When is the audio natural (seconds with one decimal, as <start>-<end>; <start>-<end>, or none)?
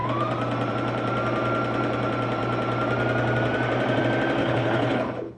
0.0-4.4